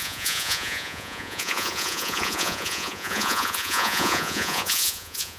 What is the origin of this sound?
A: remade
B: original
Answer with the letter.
A